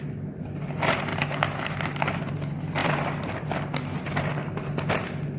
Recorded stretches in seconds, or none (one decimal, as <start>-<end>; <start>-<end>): 0.0-5.4